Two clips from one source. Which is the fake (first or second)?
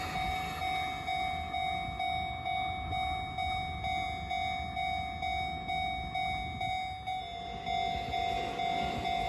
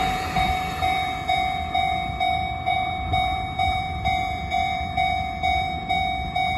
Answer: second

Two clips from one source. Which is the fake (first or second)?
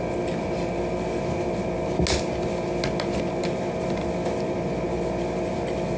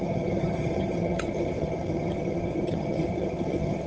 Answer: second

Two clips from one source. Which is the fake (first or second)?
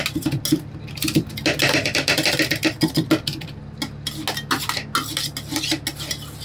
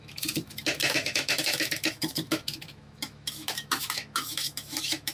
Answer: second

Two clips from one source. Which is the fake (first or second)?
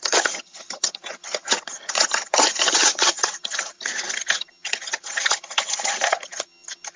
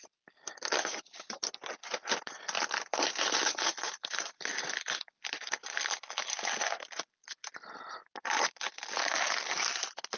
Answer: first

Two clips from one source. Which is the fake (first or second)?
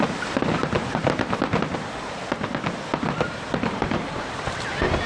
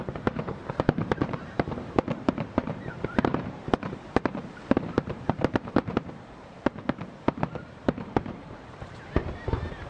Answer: second